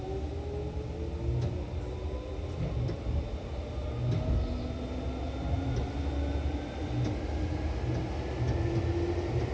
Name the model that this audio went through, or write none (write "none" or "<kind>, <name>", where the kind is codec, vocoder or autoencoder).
none